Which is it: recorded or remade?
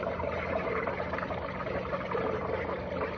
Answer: recorded